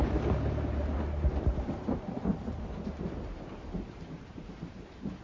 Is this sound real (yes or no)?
no